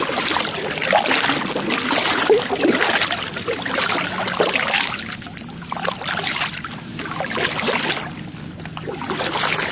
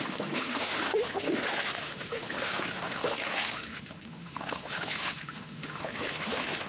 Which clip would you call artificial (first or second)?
second